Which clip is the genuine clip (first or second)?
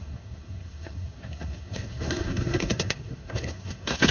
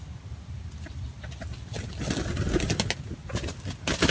second